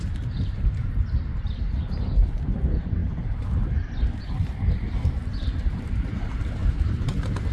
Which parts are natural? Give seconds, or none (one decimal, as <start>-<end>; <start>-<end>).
none